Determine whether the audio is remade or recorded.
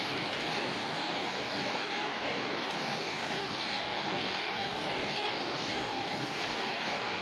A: remade